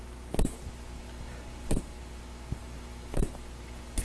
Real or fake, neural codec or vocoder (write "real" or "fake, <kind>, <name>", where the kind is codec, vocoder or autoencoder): real